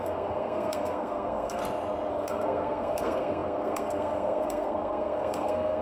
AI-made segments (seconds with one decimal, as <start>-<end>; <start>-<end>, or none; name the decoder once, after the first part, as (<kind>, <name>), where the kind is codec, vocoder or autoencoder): 0.0-1.6 (codec, SNAC); 2.1-5.8